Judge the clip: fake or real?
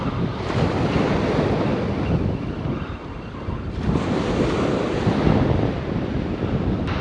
real